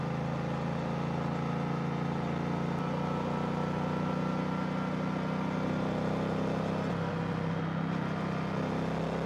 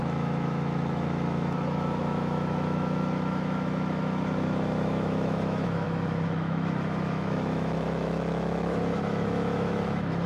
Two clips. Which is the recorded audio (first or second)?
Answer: first